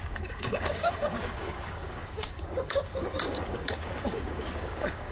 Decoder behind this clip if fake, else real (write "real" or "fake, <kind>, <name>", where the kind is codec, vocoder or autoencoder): fake, codec, DAC